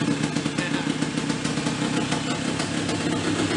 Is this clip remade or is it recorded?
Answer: recorded